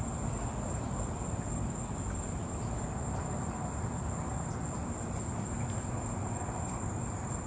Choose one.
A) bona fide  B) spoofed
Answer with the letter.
A